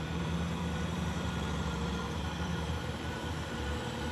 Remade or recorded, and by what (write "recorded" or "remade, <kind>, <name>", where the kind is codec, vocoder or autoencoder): remade, vocoder, BigVGAN v2